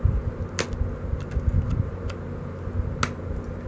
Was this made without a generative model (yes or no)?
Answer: yes